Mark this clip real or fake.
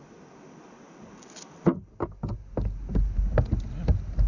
real